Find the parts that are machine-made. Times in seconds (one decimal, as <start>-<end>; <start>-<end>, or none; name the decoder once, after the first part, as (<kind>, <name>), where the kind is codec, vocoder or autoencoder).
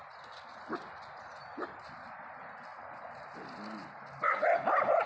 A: none